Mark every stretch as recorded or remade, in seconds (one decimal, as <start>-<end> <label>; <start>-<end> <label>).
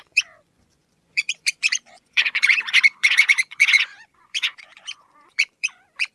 0.0-6.1 remade